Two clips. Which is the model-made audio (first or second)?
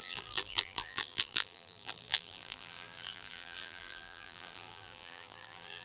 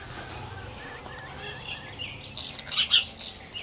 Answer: first